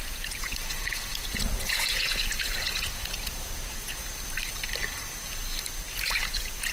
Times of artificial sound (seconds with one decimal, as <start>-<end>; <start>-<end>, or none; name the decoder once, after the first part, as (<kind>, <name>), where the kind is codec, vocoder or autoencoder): 0.0-4.0 (vocoder, Vocos); 5.8-6.7